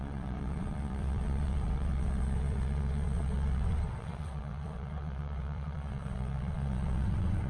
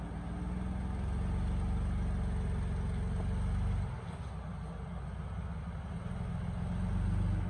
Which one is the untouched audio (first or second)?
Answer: second